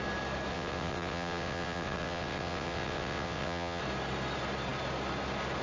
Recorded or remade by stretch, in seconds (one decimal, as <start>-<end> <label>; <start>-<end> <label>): 0.0-0.5 recorded; 0.5-3.8 remade; 3.8-5.6 recorded